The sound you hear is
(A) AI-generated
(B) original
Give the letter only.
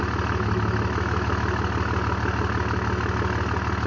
B